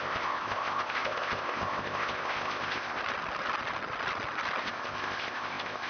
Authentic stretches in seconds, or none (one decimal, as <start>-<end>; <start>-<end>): 3.0-4.6